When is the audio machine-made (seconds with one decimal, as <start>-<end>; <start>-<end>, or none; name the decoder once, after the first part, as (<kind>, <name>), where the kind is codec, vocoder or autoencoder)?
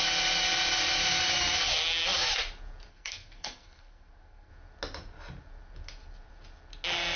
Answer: 2.9-4.5 (codec, SNAC)